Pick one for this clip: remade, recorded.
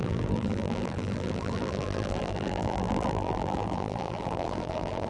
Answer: remade